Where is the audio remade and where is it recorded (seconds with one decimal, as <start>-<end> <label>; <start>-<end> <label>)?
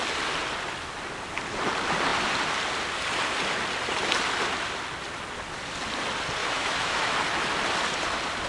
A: 0.0-6.4 recorded; 6.4-7.1 remade; 7.1-8.5 recorded